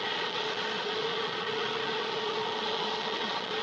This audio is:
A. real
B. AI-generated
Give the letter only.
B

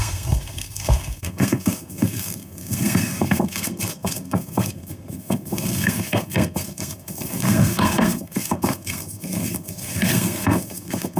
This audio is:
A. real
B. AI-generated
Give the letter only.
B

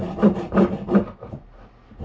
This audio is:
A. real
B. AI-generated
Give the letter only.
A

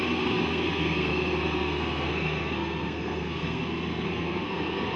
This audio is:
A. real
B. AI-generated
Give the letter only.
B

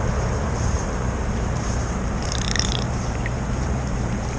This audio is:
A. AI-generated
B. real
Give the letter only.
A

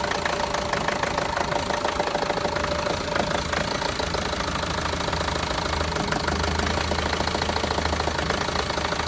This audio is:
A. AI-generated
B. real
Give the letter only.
B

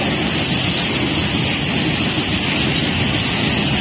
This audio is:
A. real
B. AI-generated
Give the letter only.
A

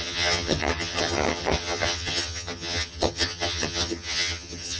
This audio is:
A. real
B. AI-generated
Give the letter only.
B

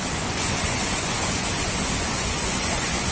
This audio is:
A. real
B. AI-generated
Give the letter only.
B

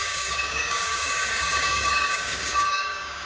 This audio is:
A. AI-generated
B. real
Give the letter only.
A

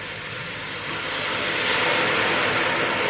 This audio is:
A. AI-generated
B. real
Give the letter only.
B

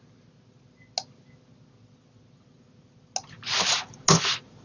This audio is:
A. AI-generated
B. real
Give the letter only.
B